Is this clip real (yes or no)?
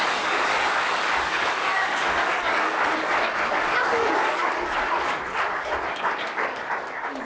no